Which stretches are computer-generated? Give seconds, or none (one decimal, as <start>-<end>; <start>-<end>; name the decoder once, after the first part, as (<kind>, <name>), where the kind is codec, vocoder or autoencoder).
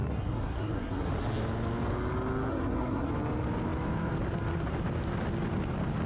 0.0-1.1 (codec, SNAC); 2.5-3.1